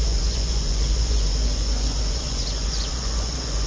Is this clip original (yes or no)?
no